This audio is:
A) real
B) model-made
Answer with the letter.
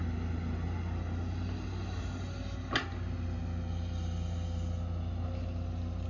A